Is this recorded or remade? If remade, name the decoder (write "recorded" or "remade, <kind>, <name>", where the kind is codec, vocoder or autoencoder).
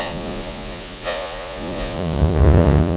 remade, vocoder, Vocos